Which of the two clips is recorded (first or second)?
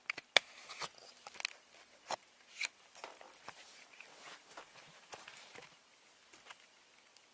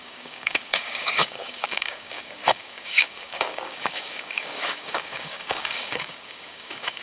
first